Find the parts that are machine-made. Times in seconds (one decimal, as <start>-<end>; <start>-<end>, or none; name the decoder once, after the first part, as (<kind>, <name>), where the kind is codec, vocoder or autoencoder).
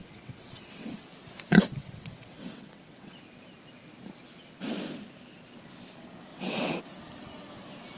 0.0-0.9 (vocoder, WaveNeXt); 1.7-3.2; 6.3-6.8